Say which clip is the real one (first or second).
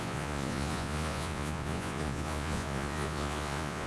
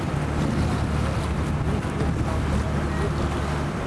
second